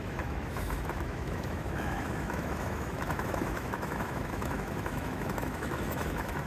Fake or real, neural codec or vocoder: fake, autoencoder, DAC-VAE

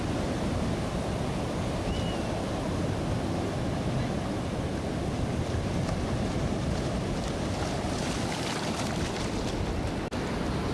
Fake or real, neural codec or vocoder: real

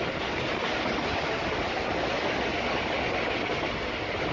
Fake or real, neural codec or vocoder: real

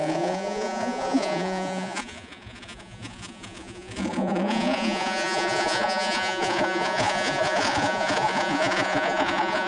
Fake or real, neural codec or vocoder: fake, vocoder, Vocos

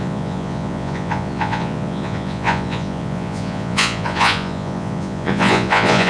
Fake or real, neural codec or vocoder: fake, vocoder, Vocos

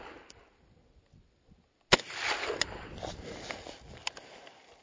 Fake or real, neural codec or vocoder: real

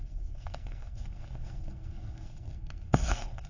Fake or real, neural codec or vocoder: fake, codec, SNAC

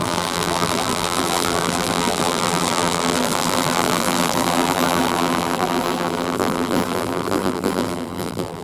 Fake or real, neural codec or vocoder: fake, vocoder, BigVGAN v2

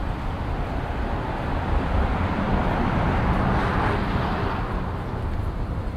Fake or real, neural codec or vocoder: real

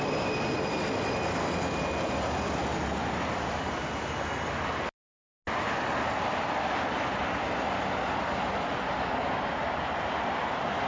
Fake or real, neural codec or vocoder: real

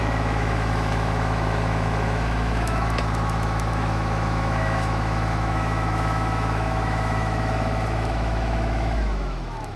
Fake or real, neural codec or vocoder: fake, autoencoder, DAC-VAE